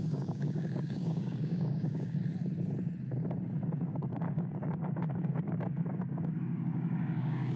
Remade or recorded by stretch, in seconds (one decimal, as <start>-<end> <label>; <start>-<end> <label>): 0.0-2.2 remade; 2.2-3.7 recorded; 3.7-7.6 remade

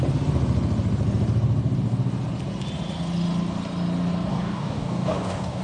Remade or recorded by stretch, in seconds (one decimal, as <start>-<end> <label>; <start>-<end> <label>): 0.0-4.3 recorded; 4.3-5.6 remade